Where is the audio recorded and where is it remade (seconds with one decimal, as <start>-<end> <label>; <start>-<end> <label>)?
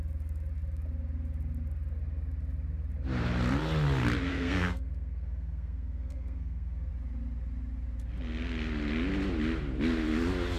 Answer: 0.0-4.3 recorded; 4.3-6.9 remade; 6.9-10.6 recorded